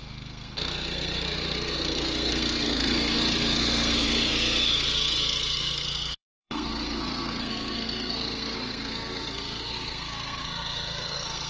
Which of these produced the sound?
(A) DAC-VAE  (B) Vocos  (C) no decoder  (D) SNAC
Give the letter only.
D